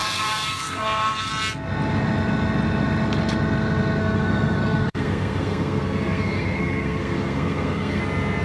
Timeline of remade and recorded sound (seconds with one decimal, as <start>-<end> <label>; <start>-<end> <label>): 0.0-1.3 remade; 1.3-4.0 recorded; 4.0-8.0 remade; 8.0-8.4 recorded